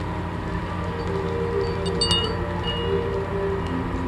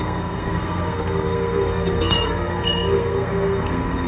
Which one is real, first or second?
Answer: first